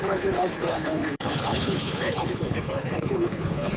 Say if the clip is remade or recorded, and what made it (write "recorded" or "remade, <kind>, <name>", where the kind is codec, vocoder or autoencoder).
remade, codec, HILCodec